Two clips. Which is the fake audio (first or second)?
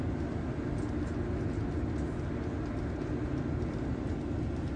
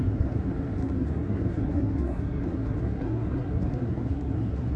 second